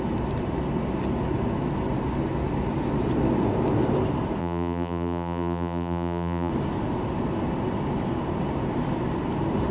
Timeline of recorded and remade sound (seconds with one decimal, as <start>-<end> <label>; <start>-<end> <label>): 0.0-4.4 recorded; 4.4-6.5 remade; 6.5-9.7 recorded